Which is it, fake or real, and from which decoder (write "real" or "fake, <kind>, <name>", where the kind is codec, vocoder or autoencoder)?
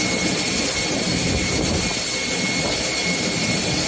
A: real